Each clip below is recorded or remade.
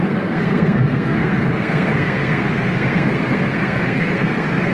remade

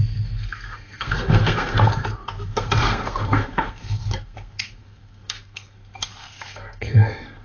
remade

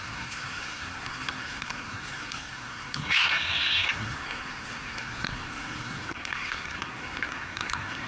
remade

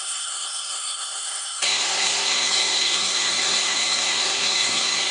remade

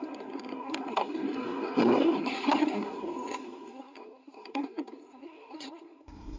remade